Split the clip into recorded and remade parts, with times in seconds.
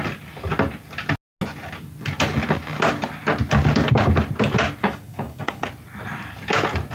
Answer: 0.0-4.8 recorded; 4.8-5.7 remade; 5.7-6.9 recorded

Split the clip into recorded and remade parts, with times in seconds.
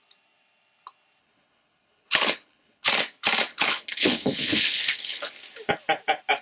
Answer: 0.0-1.2 recorded; 1.2-2.9 remade; 2.9-3.5 recorded; 3.5-5.4 remade; 5.4-6.4 recorded